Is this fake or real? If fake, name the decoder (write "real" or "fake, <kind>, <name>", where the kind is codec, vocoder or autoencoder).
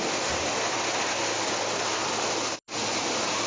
real